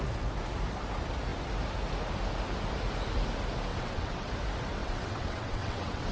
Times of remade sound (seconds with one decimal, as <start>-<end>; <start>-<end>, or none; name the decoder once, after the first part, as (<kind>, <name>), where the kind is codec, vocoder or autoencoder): 3.7-4.3 (vocoder, WaveNeXt); 4.8-6.1